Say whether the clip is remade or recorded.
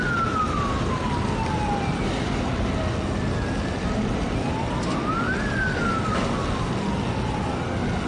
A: recorded